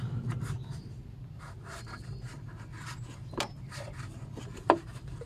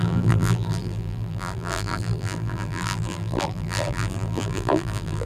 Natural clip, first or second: first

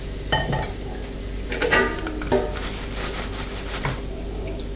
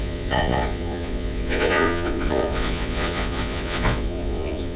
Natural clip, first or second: first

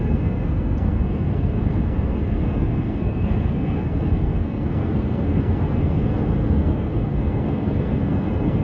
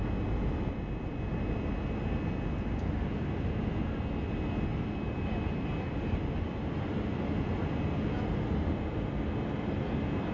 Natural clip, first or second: second